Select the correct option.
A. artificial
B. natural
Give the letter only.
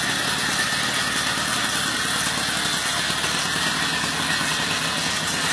B